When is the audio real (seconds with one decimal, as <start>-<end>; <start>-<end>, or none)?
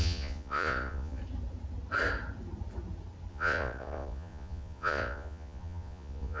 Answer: 1.2-3.3